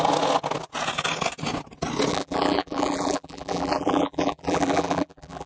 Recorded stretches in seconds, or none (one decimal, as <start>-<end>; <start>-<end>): 0.0-2.1